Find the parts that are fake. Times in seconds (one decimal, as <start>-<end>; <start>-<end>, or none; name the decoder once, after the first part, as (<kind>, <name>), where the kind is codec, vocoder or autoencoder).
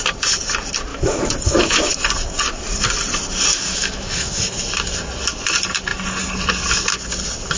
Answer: 0.9-1.9 (autoencoder, DAC-VAE); 3.5-4.4